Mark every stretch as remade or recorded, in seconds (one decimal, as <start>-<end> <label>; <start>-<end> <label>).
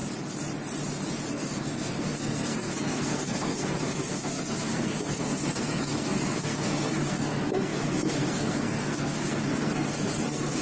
0.0-1.3 recorded; 1.3-10.6 remade